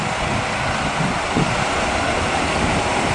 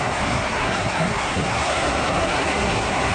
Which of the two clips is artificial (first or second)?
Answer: second